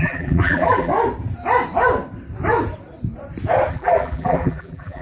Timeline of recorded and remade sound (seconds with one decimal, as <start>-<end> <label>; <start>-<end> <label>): 0.0-0.9 remade; 0.9-3.7 recorded; 3.7-5.0 remade